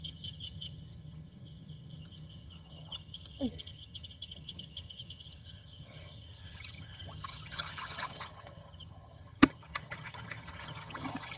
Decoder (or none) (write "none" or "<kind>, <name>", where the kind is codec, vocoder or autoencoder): vocoder, HiFi-GAN